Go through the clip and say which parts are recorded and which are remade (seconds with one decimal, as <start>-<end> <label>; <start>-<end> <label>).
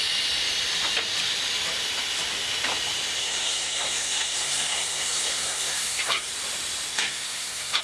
0.0-3.2 recorded; 3.2-6.3 remade; 6.3-6.9 recorded; 6.9-7.8 remade